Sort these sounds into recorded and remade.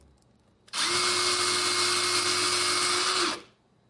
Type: recorded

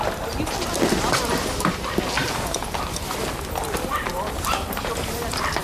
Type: recorded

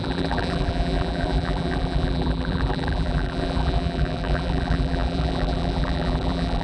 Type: remade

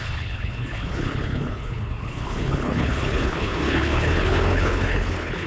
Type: remade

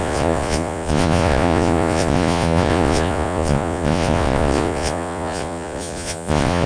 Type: remade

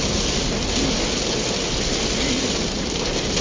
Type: recorded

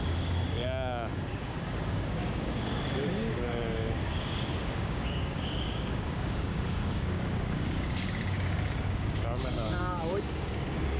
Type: remade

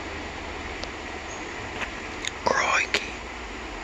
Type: recorded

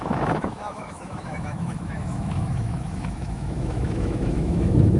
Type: remade